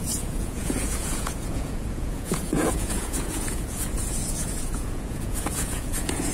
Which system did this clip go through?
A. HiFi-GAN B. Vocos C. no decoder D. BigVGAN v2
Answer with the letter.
B